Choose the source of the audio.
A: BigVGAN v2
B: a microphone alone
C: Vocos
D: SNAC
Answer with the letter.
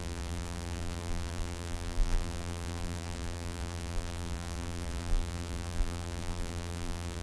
A